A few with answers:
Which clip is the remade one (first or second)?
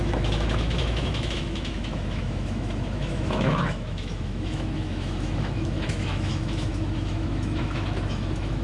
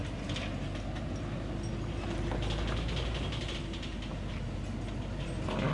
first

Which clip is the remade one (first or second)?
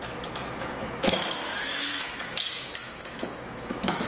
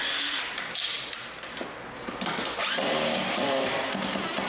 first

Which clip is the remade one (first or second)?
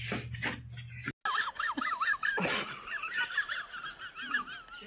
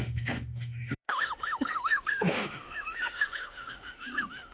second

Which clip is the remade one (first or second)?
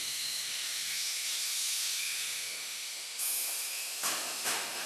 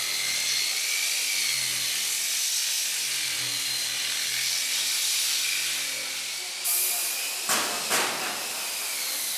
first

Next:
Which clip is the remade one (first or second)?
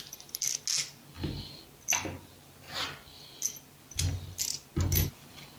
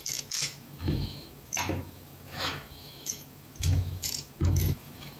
second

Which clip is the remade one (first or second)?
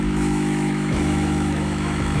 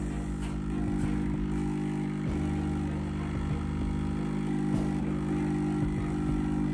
first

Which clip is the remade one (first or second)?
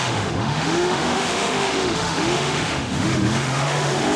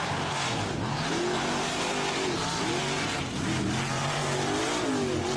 first